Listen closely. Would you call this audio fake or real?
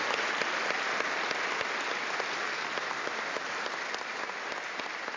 real